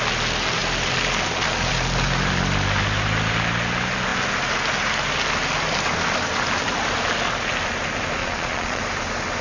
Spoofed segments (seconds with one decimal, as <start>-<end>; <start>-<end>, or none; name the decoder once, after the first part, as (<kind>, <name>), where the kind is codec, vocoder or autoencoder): 8.2-8.8 (vocoder, Vocos)